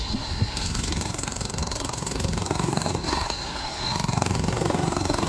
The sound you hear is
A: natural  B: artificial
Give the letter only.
B